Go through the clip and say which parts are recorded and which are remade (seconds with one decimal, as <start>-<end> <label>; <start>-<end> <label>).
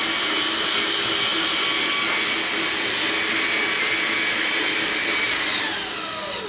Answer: 0.0-6.5 recorded